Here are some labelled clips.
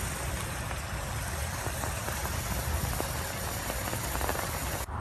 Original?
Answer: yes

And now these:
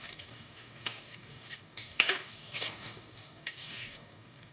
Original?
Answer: no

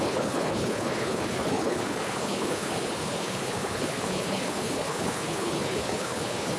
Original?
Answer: no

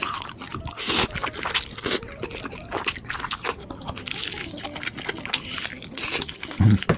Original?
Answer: yes